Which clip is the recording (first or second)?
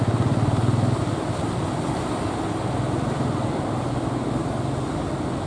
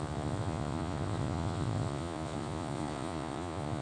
first